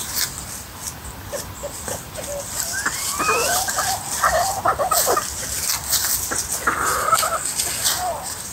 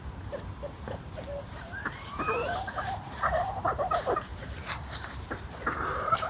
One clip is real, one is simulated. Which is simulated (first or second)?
second